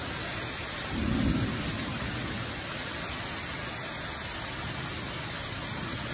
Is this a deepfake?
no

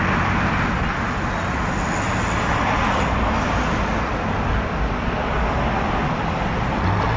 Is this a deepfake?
no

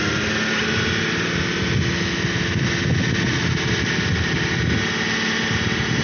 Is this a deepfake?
no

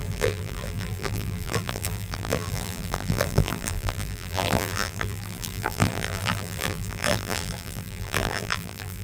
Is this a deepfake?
yes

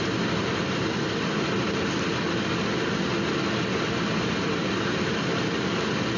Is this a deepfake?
no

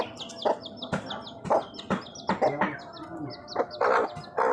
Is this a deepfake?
no